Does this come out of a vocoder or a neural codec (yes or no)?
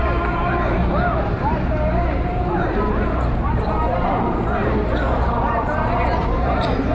yes